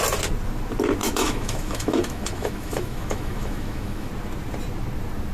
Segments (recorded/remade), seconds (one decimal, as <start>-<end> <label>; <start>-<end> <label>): 0.0-1.0 recorded; 1.0-4.1 remade; 4.1-5.3 recorded